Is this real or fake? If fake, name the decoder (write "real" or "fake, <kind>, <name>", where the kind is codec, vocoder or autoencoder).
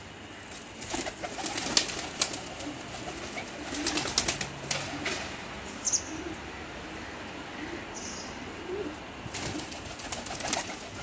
real